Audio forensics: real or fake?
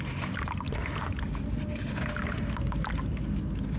real